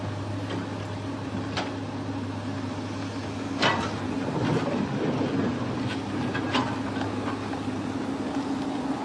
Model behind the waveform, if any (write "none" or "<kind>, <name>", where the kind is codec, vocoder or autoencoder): none